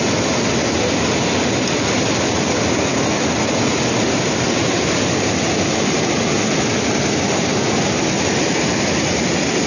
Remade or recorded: recorded